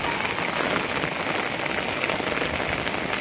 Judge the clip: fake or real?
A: real